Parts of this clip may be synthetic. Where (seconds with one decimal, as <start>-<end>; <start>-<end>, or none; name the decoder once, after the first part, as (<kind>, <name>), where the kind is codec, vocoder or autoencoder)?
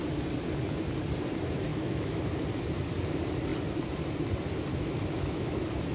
1.7-2.3 (autoencoder, DAC-VAE); 4.7-5.5